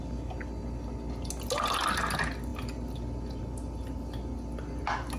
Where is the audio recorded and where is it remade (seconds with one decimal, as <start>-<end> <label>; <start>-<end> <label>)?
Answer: 0.0-5.2 recorded